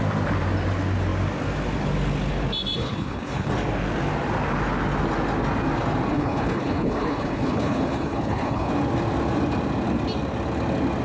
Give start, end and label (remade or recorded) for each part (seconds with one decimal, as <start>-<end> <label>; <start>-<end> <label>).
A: 0.0-2.8 recorded; 2.8-3.5 remade; 3.5-6.1 recorded; 6.1-8.7 remade; 8.7-11.0 recorded